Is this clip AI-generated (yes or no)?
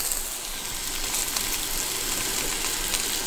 no